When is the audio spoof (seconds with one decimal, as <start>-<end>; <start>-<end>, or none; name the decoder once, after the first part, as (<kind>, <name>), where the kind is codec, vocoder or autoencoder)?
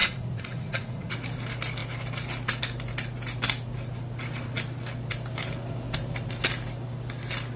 0.0-1.1 (vocoder, Vocos)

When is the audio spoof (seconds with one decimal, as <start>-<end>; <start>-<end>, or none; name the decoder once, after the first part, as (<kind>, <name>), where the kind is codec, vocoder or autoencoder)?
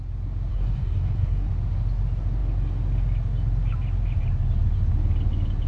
0.5-1.5 (codec, SNAC)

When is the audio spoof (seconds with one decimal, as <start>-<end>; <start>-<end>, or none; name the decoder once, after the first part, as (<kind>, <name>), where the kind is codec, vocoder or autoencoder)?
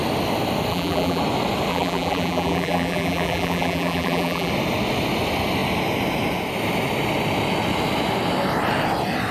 0.7-1.2 (vocoder, BigVGAN v2); 1.7-4.5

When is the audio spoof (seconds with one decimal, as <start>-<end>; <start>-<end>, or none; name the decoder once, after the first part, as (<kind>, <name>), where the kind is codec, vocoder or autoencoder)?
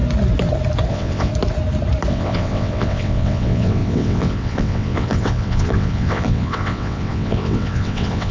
0.9-1.3 (vocoder, WaveNeXt); 2.1-8.3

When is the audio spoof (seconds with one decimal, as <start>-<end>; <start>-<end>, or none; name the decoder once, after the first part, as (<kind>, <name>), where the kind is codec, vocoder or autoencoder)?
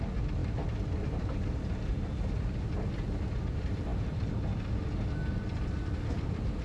none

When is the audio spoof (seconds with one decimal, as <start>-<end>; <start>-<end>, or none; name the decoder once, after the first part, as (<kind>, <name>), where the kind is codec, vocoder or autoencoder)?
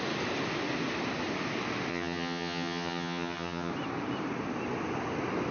1.9-3.7 (vocoder, HiFi-GAN)